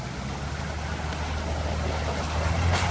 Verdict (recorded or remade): recorded